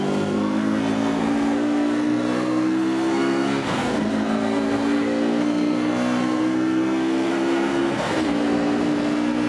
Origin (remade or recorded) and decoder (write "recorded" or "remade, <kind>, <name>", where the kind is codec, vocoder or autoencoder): remade, codec, SNAC